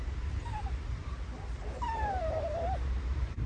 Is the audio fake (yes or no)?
yes